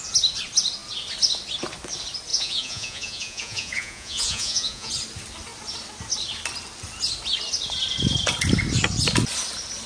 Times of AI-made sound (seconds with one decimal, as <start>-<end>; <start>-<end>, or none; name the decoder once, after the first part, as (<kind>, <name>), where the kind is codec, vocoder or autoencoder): 2.3-4.9 (vocoder, Vocos)